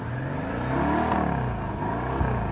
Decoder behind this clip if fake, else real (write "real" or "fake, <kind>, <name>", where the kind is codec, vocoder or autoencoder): real